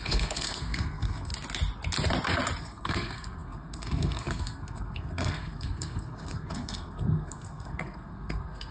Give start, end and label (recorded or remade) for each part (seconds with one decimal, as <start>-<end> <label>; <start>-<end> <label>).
0.0-1.3 remade; 1.3-2.6 recorded; 2.6-8.7 remade